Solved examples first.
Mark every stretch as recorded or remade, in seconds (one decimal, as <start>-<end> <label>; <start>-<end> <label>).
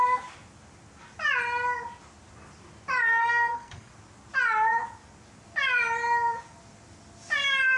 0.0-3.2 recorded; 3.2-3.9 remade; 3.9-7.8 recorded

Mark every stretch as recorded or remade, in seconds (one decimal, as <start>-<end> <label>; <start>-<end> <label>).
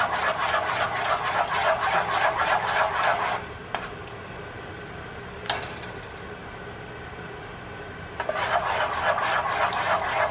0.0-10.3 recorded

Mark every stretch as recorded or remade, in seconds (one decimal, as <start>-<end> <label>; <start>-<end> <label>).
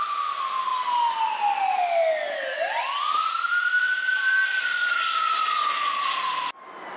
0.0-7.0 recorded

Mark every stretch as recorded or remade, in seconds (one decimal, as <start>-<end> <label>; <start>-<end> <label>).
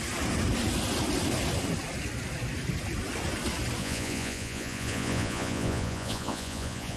0.0-3.8 recorded; 3.8-7.0 remade